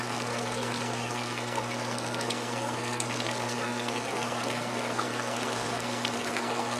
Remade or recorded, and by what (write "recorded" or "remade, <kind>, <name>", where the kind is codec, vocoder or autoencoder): remade, codec, SNAC